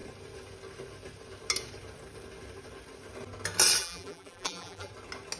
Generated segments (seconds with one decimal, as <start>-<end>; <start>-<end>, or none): 3.8-4.9